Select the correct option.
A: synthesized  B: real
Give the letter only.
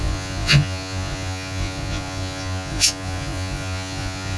A